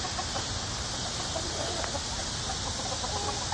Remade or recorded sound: recorded